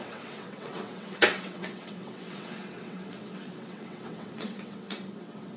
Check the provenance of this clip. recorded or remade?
remade